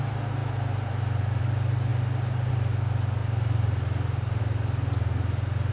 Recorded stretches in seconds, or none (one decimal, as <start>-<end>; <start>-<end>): 0.0-5.7